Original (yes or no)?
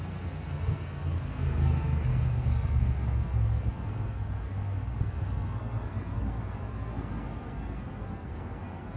no